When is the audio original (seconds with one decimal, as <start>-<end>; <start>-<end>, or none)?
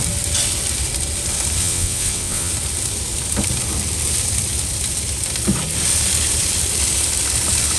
0.0-1.6; 2.5-7.8